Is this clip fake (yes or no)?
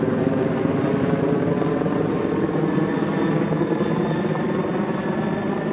no